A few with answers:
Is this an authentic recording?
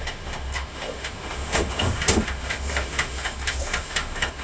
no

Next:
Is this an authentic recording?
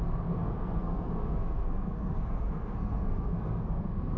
no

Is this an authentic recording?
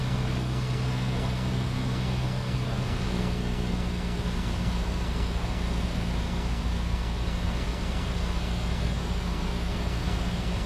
no